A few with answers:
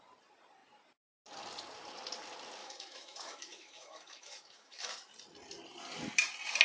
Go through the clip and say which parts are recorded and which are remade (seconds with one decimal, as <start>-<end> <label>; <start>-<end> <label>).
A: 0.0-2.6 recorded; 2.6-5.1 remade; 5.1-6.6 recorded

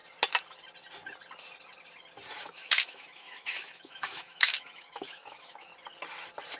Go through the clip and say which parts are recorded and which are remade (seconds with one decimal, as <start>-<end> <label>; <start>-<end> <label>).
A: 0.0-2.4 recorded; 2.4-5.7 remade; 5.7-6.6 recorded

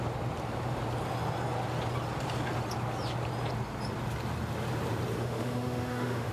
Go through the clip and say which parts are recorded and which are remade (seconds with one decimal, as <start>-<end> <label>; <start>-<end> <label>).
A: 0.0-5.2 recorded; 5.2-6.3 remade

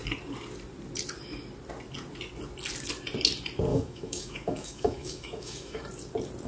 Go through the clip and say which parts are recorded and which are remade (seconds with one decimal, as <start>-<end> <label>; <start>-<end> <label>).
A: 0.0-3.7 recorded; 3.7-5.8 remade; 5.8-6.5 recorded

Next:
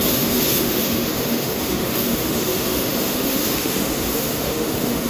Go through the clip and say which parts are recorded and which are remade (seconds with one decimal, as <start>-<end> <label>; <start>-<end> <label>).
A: 0.0-5.1 remade

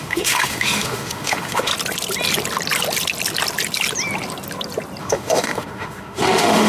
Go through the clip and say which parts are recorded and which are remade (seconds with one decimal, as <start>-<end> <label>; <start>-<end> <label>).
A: 0.0-1.7 remade; 1.7-5.0 recorded; 5.0-6.7 remade

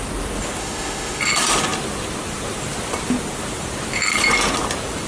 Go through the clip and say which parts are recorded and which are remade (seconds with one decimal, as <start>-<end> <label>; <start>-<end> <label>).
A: 0.0-0.6 recorded; 0.6-1.2 remade; 1.2-5.1 recorded